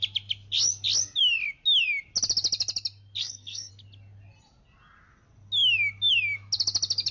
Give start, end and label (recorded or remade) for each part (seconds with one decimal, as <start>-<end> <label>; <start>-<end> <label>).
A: 0.0-3.2 recorded; 3.2-3.7 remade; 3.7-7.1 recorded